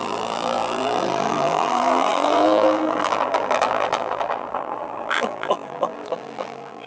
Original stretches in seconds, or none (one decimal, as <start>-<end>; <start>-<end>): none